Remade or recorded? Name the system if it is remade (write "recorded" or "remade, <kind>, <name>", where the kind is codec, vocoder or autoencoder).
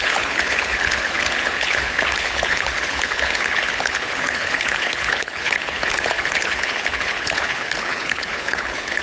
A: remade, codec, HILCodec